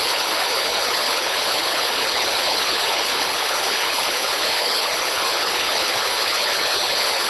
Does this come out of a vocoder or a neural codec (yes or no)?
yes